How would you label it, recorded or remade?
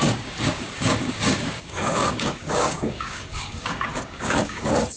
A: remade